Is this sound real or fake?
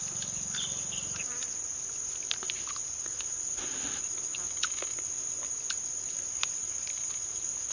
real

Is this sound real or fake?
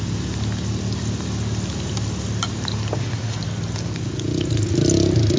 real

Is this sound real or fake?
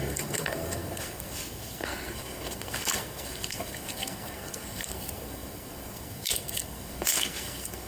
fake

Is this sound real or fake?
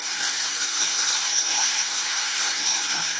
fake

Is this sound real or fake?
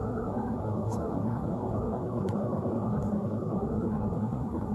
fake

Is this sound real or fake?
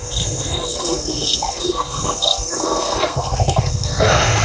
fake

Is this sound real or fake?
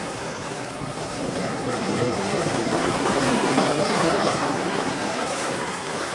fake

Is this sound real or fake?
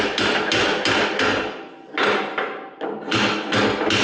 real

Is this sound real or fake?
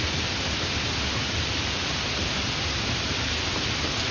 real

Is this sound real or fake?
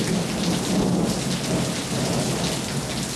real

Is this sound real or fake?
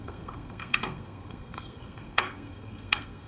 fake